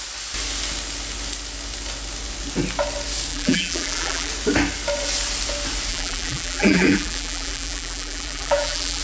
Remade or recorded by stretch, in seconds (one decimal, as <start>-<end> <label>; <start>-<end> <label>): 0.0-3.3 recorded; 3.3-4.3 remade; 4.3-5.9 recorded; 5.9-9.0 remade